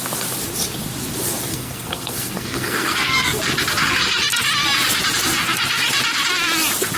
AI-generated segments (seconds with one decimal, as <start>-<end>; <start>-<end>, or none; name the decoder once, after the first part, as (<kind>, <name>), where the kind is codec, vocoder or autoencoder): 1.5-3.4 (codec, SNAC)